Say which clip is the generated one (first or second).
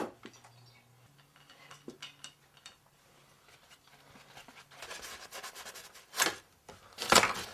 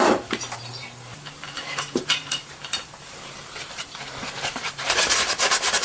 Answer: second